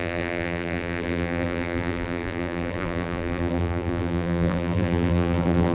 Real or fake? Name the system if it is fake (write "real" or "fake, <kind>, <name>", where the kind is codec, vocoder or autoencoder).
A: fake, vocoder, BigVGAN v2